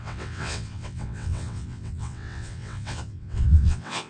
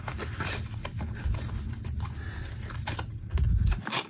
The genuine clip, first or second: second